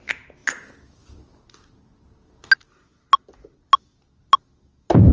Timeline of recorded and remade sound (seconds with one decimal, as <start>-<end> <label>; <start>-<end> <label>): 0.0-5.1 recorded